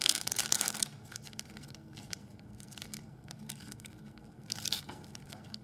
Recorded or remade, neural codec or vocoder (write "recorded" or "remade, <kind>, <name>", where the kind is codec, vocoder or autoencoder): remade, codec, SNAC